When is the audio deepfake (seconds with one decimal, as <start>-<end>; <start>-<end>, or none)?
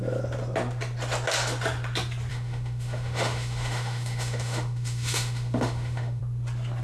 2.3-6.2